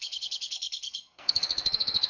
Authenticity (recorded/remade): remade